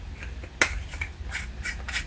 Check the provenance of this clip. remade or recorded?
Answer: recorded